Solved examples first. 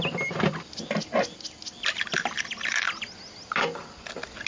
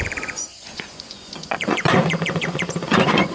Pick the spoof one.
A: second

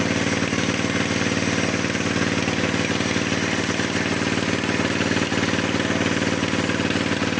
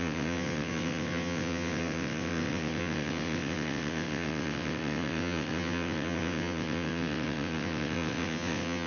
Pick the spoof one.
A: second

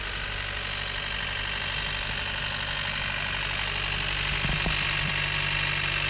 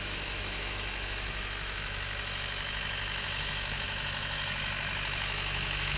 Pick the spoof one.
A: second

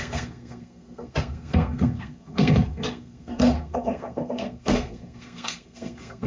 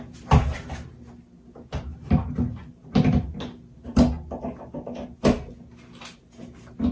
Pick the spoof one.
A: first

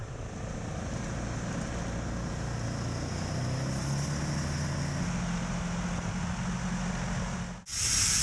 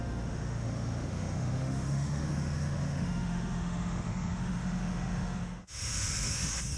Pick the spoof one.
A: second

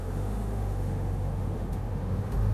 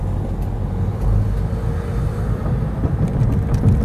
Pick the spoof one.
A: first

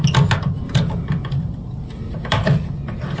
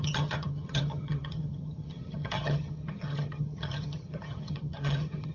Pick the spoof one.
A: second